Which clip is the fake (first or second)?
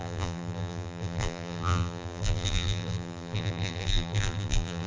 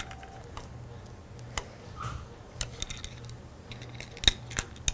first